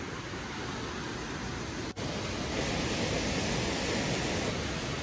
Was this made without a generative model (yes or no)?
yes